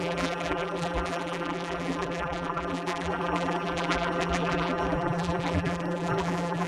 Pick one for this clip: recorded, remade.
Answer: remade